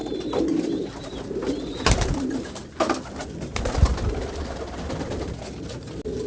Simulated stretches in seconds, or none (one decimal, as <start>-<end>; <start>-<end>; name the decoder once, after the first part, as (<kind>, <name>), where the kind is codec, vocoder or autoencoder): 0.0-2.7 (vocoder, BigVGAN v2)